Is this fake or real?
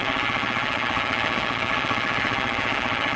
fake